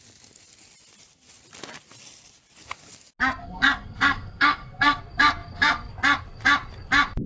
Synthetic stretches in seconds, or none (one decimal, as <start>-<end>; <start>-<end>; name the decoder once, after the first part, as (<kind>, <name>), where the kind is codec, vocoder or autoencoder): 3.4-5.0 (codec, SNAC)